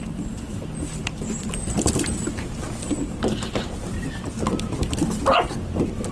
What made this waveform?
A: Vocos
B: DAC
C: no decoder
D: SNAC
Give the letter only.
C